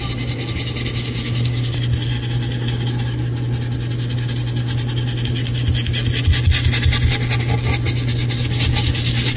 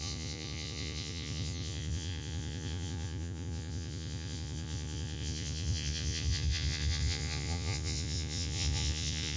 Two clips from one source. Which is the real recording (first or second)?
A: first